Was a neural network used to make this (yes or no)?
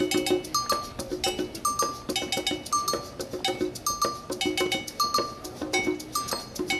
no